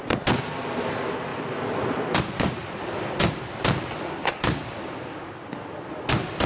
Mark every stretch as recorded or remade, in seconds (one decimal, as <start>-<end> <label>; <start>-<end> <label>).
0.0-6.5 recorded